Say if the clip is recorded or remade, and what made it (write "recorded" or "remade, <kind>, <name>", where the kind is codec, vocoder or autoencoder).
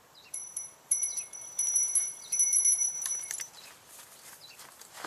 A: remade, vocoder, BigVGAN v2